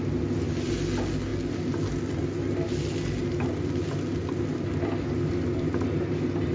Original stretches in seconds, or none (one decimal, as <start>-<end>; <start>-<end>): 0.0-6.5